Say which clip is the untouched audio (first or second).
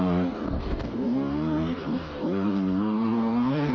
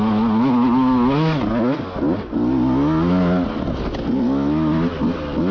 second